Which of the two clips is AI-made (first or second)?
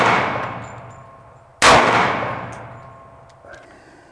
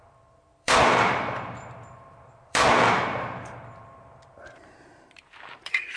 second